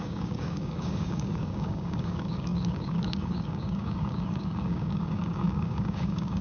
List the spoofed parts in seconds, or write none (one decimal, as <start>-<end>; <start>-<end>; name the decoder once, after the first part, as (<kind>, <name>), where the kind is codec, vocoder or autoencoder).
0.0-6.4 (codec, DAC)